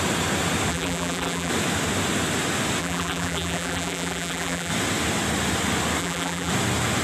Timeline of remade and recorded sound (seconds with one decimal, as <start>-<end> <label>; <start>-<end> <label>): 0.0-0.7 recorded; 0.7-1.5 remade; 1.5-2.8 recorded; 2.8-4.7 remade; 4.7-6.0 recorded; 6.0-6.5 remade; 6.5-7.0 recorded